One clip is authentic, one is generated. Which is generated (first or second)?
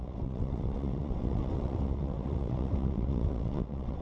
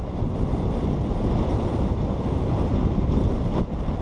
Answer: first